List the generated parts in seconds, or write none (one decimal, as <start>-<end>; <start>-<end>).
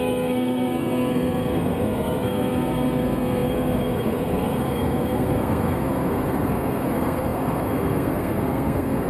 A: 0.0-9.1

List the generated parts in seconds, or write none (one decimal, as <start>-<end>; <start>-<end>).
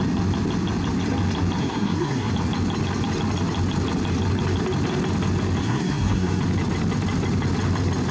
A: 1.6-2.3; 5.6-6.4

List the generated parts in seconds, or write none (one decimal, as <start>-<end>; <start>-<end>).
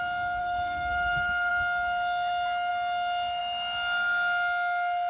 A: 0.4-1.5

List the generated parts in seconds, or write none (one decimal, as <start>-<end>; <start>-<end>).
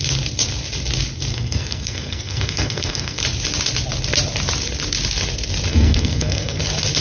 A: 1.3-3.2; 5.7-6.6